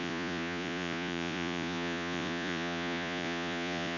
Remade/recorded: remade